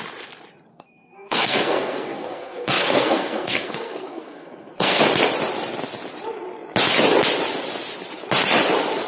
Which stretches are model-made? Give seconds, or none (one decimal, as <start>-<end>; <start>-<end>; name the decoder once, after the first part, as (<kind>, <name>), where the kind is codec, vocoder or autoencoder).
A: 0.7-5.0 (codec, SNAC)